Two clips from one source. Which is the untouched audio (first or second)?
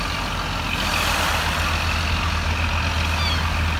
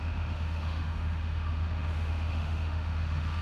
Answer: first